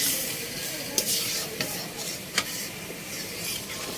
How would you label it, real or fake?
fake